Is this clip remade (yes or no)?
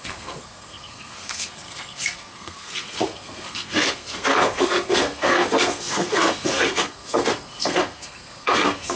yes